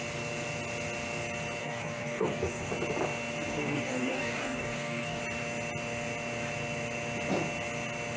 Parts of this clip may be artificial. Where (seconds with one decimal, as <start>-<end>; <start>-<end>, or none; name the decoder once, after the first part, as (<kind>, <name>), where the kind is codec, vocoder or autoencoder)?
1.6-2.7 (codec, DAC); 3.5-5.2